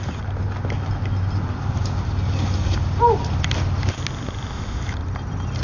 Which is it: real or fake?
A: real